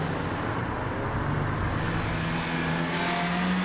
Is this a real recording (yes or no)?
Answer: yes